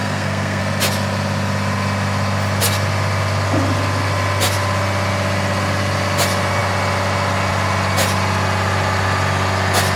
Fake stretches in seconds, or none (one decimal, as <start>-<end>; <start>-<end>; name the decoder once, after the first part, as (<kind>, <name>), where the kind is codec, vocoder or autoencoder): 0.0-0.6 (codec, SNAC)